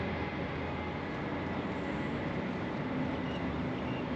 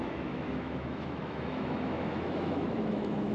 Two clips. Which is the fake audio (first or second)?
second